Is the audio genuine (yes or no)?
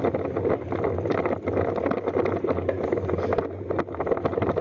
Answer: yes